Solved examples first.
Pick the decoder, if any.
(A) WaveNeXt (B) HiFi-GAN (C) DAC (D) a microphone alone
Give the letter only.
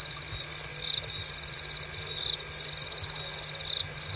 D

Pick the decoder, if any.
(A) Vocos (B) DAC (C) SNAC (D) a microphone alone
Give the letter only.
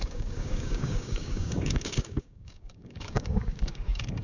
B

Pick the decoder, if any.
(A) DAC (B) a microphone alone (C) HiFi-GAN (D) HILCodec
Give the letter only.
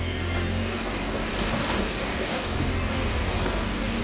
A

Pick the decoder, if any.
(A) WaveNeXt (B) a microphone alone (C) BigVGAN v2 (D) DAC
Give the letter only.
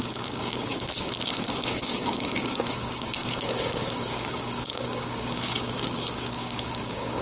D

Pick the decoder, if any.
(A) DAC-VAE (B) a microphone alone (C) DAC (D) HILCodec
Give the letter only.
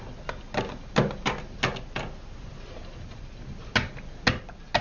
B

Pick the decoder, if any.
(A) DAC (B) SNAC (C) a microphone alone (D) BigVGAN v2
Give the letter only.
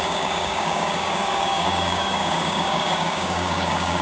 A